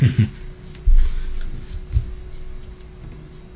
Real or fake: real